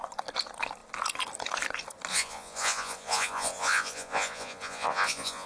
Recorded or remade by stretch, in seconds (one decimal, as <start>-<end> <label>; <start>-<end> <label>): 0.0-2.1 recorded; 2.1-5.5 remade